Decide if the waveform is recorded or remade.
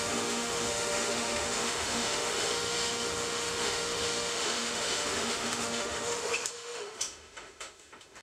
remade